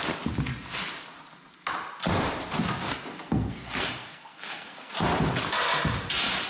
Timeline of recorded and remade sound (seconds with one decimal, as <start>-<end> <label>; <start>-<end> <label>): 0.0-3.1 recorded; 3.1-4.9 remade; 4.9-6.5 recorded

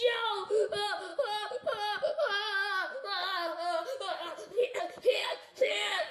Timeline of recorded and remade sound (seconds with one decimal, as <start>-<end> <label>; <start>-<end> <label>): 0.0-5.2 recorded; 5.2-6.1 remade

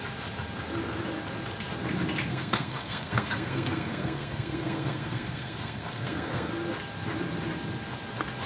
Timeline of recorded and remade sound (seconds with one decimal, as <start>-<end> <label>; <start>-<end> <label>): 0.0-2.3 recorded; 2.3-6.5 remade; 6.5-8.5 recorded

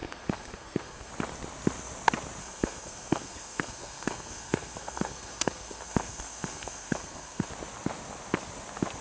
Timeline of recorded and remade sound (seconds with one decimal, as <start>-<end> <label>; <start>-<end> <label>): 0.0-1.1 remade; 1.1-2.4 recorded; 2.4-7.5 remade; 7.5-9.0 recorded

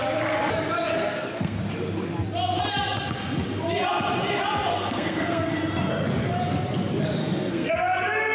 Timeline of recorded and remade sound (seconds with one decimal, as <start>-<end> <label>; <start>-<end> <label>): 0.0-0.9 recorded; 0.9-1.6 remade; 1.6-4.7 recorded; 4.7-5.9 remade; 5.9-7.2 recorded; 7.2-7.7 remade; 7.7-8.3 recorded

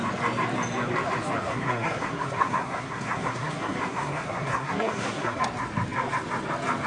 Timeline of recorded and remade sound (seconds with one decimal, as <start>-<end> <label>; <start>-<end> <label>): 0.0-1.4 recorded; 1.4-5.4 remade; 5.4-6.9 recorded

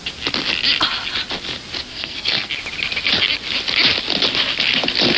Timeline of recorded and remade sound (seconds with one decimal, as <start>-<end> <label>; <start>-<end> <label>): 0.0-1.9 recorded; 1.9-2.5 remade; 2.5-5.2 recorded

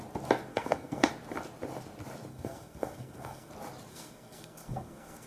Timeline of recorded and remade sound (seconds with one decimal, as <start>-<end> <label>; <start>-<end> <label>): 0.0-0.5 recorded; 0.5-1.1 remade; 1.1-2.3 recorded; 2.3-3.5 remade; 3.5-3.9 recorded; 3.9-5.3 remade